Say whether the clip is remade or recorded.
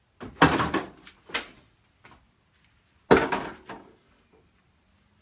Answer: recorded